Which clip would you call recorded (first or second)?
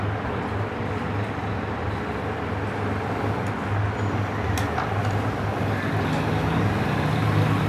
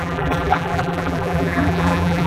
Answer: first